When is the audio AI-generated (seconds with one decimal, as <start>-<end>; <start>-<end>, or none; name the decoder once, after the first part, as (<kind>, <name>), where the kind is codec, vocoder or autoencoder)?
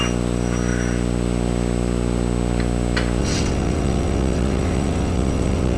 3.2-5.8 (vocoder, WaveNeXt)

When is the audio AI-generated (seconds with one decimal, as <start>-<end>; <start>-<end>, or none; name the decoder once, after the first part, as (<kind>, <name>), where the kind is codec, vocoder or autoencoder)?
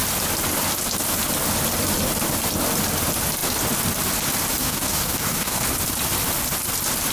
4.6-5.6 (codec, DAC)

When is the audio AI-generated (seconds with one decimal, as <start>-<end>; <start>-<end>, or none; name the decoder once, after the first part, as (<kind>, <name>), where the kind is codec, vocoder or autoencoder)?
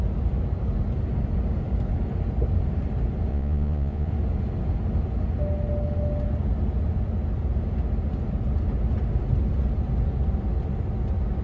3.3-4.1 (vocoder, Vocos)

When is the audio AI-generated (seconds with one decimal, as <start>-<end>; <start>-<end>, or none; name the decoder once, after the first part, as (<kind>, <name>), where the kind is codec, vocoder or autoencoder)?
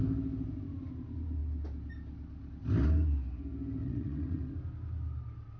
3.8-4.5 (vocoder, WaveNeXt)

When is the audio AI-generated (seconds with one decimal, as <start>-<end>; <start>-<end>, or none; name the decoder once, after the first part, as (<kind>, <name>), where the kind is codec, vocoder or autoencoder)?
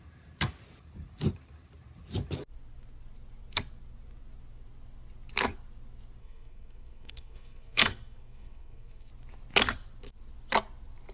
6.2-9.1 (codec, SNAC)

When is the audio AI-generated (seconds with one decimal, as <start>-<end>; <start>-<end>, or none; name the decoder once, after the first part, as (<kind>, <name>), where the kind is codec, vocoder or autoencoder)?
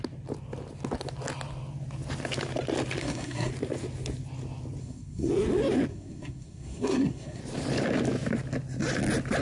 3.0-3.5 (codec, SNAC); 4.8-5.3; 5.9-7.4